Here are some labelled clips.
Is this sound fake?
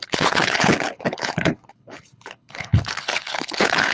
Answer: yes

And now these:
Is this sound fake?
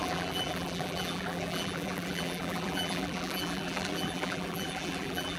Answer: yes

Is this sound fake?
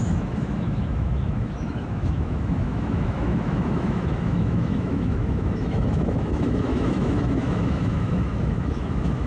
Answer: yes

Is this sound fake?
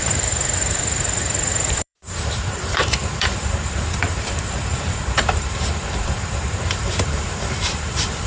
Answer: yes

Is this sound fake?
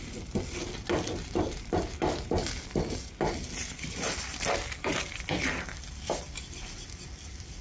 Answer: no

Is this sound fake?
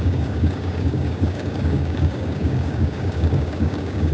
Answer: yes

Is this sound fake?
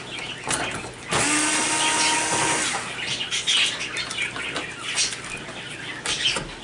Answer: no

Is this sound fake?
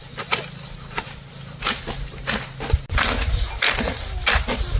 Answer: no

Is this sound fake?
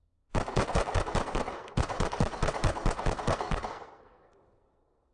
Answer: yes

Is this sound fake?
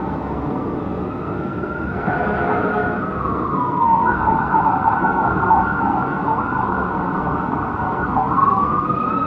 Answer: yes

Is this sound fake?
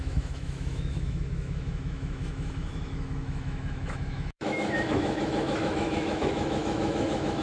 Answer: yes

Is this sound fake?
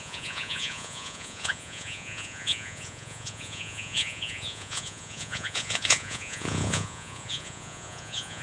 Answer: yes